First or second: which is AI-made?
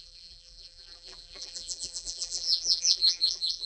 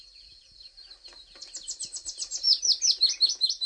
first